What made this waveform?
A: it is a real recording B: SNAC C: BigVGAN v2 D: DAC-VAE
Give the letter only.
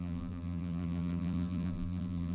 C